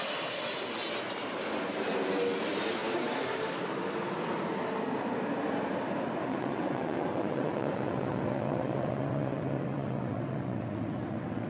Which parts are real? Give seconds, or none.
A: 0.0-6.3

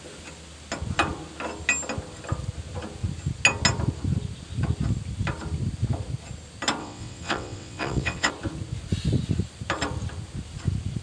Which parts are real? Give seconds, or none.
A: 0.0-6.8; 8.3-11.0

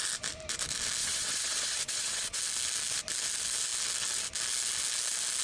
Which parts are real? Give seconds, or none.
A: 0.0-1.0; 2.4-5.4

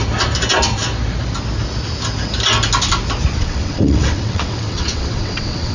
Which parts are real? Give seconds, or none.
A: 0.0-3.4

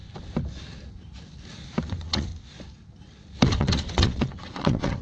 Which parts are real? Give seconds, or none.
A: 0.0-1.8; 2.3-3.4

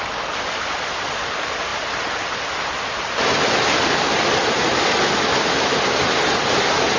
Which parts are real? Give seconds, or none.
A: 0.0-7.0

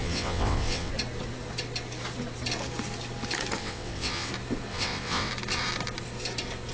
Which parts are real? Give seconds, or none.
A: 0.9-3.6; 4.3-4.7; 5.3-6.7